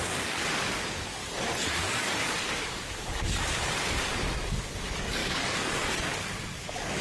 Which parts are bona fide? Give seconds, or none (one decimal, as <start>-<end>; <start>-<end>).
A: 1.2-1.7